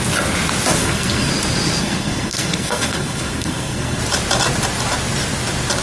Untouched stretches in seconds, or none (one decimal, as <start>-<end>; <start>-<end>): 0.0-0.8; 1.3-1.8; 4.0-5.8